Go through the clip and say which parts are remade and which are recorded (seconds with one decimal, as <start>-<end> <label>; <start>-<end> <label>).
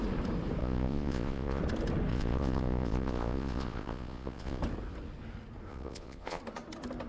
0.0-0.6 recorded; 0.6-1.6 remade; 1.6-2.1 recorded; 2.1-4.6 remade; 4.6-5.7 recorded; 5.7-6.4 remade; 6.4-7.1 recorded